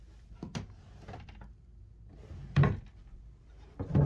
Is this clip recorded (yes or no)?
yes